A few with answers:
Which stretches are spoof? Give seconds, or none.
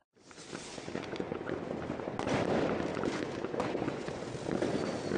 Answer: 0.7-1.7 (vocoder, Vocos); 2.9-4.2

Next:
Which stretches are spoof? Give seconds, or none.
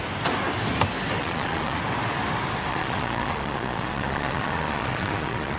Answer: 1.2-1.8 (vocoder, Vocos); 2.7-5.6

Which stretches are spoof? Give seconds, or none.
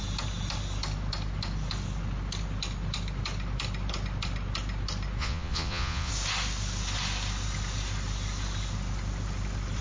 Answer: 5.2-6.1 (vocoder, Vocos)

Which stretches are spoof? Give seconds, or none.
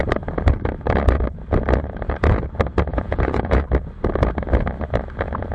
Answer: 2.9-3.6 (vocoder, Vocos)